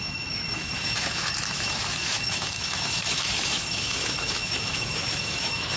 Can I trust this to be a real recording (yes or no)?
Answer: no